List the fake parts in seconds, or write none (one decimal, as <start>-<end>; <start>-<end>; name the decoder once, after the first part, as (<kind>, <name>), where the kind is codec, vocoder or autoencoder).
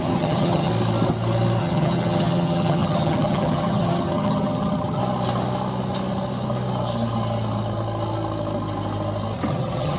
0.0-0.7 (vocoder, HiFi-GAN); 1.6-5.0; 9.5-10.0